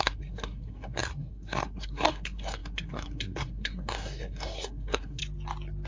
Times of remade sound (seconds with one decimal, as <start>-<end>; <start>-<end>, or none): 0.0-5.2